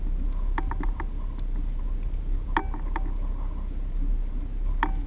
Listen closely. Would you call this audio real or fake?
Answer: real